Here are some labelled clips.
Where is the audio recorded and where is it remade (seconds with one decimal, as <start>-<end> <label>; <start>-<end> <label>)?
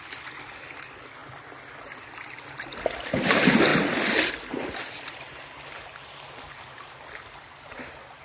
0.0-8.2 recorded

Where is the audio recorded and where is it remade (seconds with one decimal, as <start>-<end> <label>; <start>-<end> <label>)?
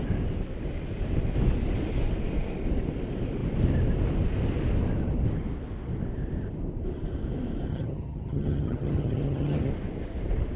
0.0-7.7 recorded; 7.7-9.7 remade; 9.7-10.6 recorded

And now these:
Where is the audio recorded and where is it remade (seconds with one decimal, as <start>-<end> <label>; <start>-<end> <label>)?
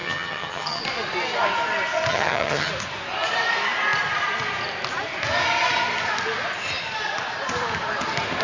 0.0-0.8 remade; 0.8-2.1 recorded; 2.1-2.7 remade; 2.7-8.4 recorded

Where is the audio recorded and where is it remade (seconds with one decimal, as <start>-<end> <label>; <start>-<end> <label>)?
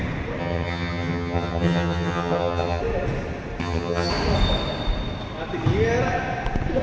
0.0-0.4 recorded; 0.4-2.8 remade; 2.8-3.6 recorded; 3.6-4.1 remade; 4.1-6.8 recorded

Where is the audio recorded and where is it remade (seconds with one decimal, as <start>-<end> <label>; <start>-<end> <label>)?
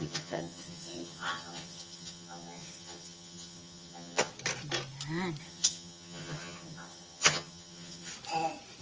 0.0-4.3 remade; 4.3-5.4 recorded; 5.4-8.1 remade; 8.1-8.8 recorded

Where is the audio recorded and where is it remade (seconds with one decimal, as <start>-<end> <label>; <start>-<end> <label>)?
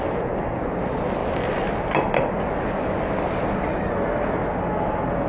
0.0-5.3 recorded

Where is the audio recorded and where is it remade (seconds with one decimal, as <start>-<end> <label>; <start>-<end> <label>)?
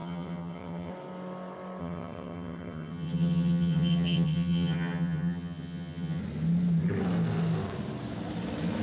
0.0-0.9 remade; 0.9-1.8 recorded; 1.8-6.2 remade; 6.2-8.8 recorded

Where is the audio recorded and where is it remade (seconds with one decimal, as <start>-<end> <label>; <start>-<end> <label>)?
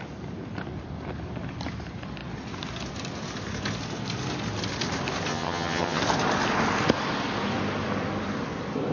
0.0-5.3 recorded; 5.3-6.0 remade; 6.0-8.9 recorded